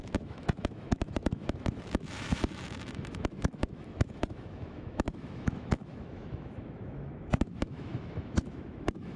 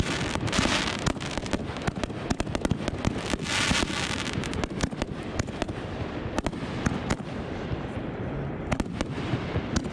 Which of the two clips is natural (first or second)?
second